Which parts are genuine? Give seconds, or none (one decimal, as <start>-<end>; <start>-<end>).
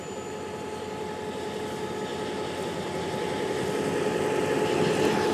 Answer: 0.0-5.3